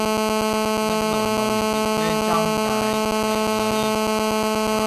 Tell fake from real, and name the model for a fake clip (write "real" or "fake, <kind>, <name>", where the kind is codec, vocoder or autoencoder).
real